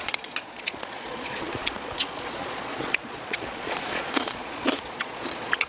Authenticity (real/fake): fake